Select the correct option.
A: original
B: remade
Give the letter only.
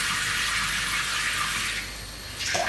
A